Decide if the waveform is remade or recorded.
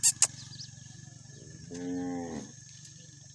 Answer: recorded